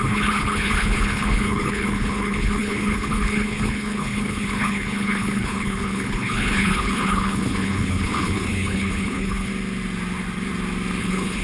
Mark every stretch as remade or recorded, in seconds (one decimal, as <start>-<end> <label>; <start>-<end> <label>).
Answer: 0.0-9.5 remade; 9.5-11.0 recorded; 11.0-11.4 remade